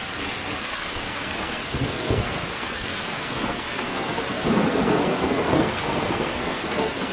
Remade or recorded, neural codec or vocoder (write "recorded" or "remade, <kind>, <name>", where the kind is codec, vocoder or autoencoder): remade, codec, SNAC